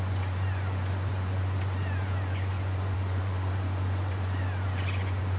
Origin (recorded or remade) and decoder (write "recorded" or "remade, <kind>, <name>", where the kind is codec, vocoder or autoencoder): remade, vocoder, Vocos